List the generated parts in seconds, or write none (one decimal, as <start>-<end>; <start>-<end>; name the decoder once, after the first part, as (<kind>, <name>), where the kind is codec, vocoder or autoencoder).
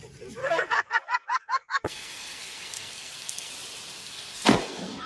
0.4-3.5 (codec, SNAC); 4.0-5.1